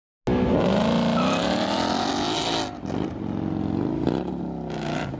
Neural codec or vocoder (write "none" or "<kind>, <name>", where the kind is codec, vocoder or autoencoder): none